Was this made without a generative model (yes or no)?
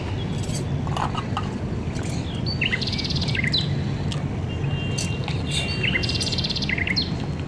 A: yes